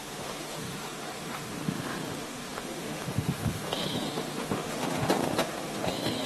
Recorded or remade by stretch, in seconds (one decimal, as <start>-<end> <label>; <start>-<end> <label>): 0.0-6.3 remade